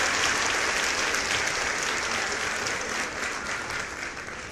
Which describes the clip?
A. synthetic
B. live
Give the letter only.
B